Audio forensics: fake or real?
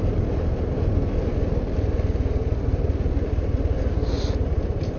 real